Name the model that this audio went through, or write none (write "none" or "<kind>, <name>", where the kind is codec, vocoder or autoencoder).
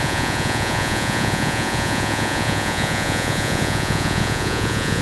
vocoder, Vocos